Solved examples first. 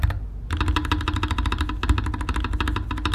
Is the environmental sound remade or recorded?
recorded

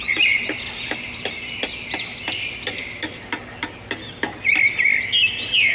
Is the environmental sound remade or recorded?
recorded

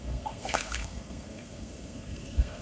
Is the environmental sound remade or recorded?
remade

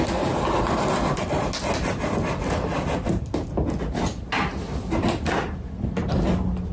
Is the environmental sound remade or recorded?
recorded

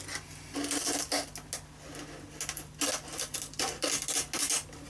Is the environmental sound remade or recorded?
recorded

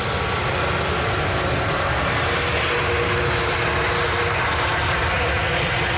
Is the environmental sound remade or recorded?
recorded